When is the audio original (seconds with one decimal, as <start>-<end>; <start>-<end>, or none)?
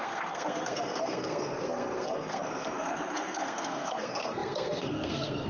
none